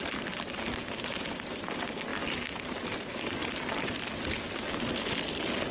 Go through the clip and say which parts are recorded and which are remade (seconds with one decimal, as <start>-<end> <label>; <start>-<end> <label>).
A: 0.0-5.7 recorded